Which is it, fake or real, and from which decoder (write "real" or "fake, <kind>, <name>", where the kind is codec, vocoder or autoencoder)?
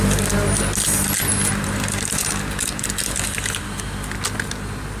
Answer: real